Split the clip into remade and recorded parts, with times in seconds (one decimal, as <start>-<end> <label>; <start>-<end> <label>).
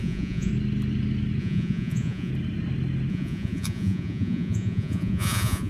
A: 0.0-0.5 remade; 0.5-1.4 recorded; 1.4-2.3 remade; 2.3-3.1 recorded; 3.1-5.7 remade